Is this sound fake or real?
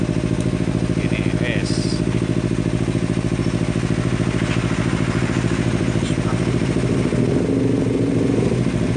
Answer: real